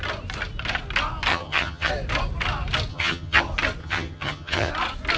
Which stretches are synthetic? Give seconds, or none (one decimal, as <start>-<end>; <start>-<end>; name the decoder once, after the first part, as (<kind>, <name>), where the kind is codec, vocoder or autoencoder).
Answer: 1.3-1.9 (vocoder, HiFi-GAN); 2.9-3.4; 3.8-4.7